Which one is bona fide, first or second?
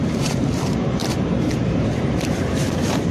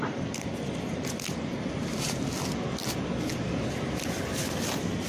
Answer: second